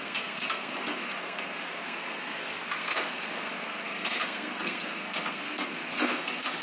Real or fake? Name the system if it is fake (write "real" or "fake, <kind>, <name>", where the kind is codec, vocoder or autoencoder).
fake, codec, SNAC